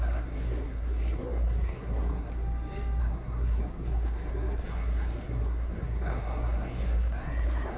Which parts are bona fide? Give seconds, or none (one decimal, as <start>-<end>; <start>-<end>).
2.3-3.0